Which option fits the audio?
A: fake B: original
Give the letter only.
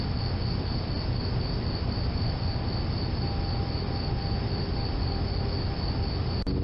B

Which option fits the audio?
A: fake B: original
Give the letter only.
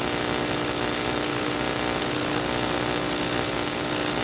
B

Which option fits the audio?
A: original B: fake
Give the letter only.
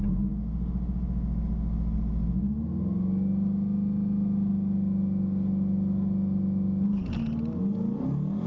A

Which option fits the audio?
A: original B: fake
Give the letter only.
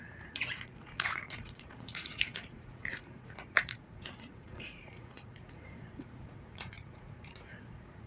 B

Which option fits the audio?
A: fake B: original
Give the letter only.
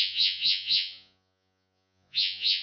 A